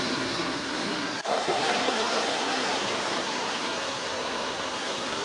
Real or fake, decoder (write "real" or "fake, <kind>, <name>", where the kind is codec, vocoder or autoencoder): fake, codec, SNAC